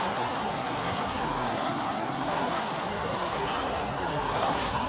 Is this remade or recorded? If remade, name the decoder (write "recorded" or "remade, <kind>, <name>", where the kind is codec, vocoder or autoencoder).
remade, codec, SNAC